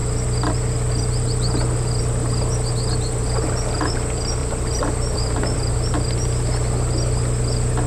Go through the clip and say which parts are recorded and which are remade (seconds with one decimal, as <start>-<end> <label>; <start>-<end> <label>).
0.0-4.4 recorded; 4.4-5.7 remade; 5.7-7.9 recorded